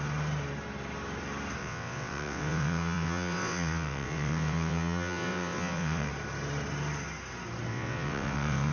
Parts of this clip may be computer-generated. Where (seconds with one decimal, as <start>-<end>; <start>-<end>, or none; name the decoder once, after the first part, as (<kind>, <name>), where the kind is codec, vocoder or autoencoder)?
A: 1.6-6.1 (vocoder, WaveNeXt); 7.7-8.7